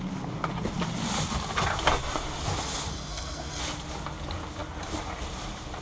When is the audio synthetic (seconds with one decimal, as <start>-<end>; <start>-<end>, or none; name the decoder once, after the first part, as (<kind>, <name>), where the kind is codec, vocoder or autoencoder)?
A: 2.9-3.6 (codec, SNAC)